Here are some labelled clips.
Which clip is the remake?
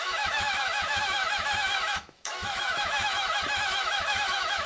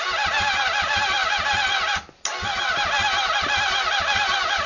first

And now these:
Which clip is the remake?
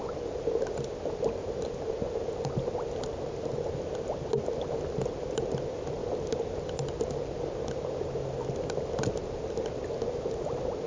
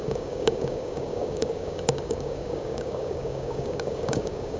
second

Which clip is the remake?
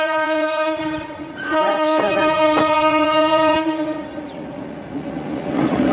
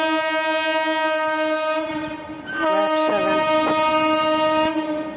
first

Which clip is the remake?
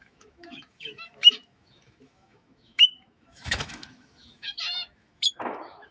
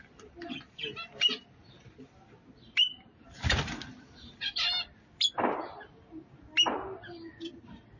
first